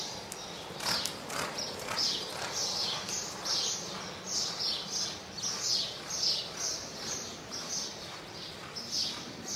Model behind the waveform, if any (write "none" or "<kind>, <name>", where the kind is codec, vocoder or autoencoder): none